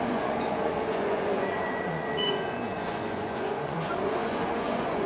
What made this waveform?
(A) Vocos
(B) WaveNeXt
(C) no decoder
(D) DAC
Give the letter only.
A